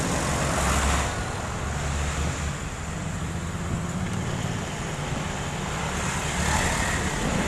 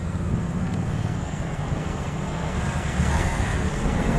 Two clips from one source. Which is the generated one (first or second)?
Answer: second